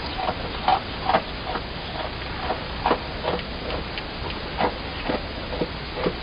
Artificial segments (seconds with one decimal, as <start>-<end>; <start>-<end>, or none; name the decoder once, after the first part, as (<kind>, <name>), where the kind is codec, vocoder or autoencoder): none